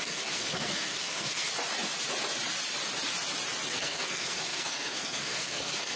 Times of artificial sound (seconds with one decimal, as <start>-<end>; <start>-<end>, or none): 0.0-1.5; 3.7-6.0